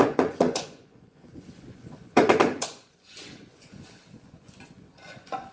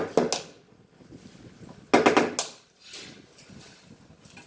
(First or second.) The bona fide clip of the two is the second